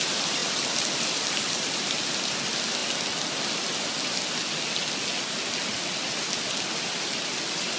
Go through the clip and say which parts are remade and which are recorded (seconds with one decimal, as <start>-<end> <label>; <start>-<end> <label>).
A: 0.0-0.4 recorded; 0.4-2.2 remade; 2.2-7.8 recorded